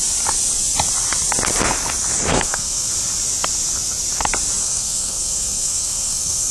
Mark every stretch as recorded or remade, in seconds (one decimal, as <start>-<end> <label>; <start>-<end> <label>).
0.0-2.3 recorded; 2.3-2.9 remade; 2.9-4.6 recorded; 4.6-6.5 remade